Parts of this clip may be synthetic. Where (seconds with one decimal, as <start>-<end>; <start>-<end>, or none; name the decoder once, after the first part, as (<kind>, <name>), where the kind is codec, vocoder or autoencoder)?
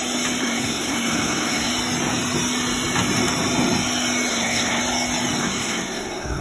0.4-1.7 (codec, SNAC); 4.3-4.8; 5.4-6.4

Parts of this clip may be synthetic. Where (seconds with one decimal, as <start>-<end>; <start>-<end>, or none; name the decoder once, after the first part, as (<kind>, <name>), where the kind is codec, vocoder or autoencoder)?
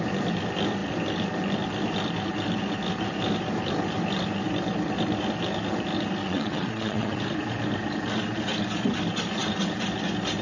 6.2-7.2 (vocoder, Vocos)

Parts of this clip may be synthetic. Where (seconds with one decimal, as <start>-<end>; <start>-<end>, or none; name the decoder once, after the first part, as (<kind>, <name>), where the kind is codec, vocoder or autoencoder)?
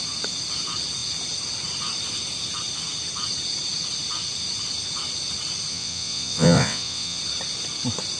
5.7-7.2 (vocoder, WaveNeXt)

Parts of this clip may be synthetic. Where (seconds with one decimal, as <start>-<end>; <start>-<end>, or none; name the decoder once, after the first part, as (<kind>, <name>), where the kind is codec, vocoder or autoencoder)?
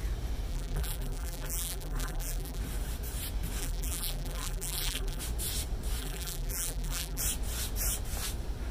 0.5-2.6 (vocoder, BigVGAN v2); 3.6-5.2; 6.0-7.2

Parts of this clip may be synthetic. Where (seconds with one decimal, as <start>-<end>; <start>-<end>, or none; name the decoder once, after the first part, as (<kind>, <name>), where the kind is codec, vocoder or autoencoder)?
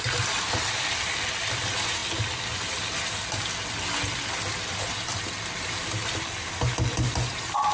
none